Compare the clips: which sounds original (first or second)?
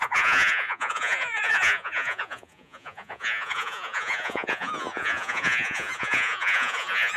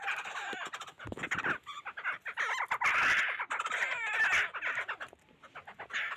second